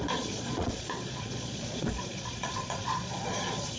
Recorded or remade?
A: remade